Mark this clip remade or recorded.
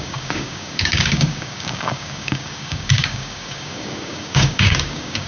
remade